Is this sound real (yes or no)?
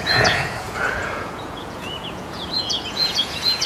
no